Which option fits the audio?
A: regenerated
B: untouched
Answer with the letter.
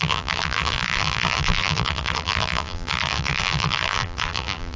A